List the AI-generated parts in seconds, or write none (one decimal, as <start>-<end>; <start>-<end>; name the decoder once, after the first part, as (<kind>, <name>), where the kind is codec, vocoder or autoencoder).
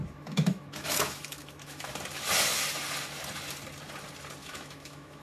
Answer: 0.0-1.9 (autoencoder, DAC-VAE); 4.4-5.2